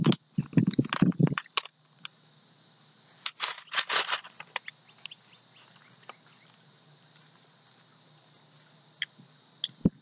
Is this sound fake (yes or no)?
no